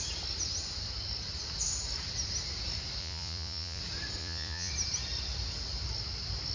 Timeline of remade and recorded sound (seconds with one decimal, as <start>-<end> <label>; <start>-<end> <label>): 0.0-3.0 recorded; 3.0-3.8 remade; 3.8-4.2 recorded; 4.2-4.7 remade; 4.7-6.5 recorded